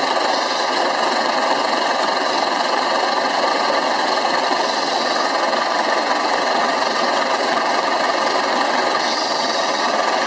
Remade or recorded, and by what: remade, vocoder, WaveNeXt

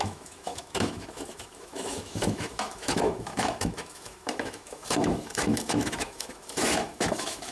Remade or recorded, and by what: remade, autoencoder, DAC-VAE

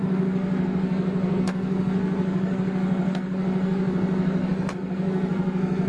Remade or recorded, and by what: remade, codec, SNAC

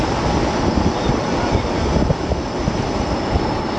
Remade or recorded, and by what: recorded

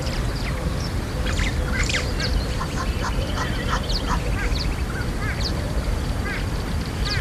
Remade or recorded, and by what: remade, vocoder, BigVGAN v2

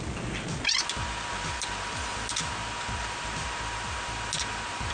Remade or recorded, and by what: recorded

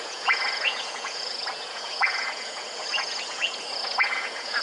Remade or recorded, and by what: remade, vocoder, Vocos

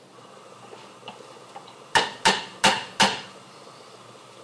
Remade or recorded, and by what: recorded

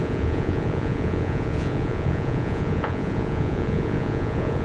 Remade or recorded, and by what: remade, vocoder, Vocos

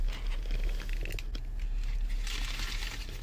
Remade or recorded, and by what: recorded